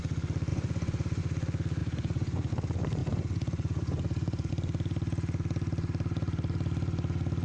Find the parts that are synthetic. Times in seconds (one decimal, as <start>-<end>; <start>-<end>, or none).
0.5-1.2; 1.8-2.5; 3.0-4.5